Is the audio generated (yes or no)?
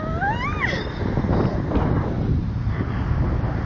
no